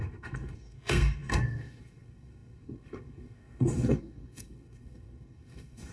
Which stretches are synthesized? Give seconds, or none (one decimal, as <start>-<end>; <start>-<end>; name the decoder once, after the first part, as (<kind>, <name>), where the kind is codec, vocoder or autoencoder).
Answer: 0.0-5.9 (codec, SNAC)